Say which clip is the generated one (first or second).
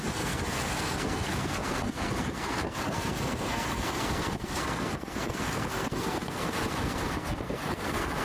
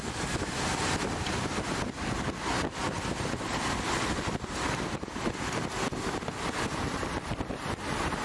first